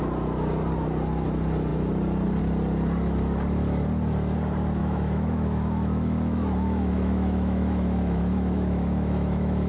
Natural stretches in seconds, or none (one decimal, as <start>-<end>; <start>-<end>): 0.0-4.8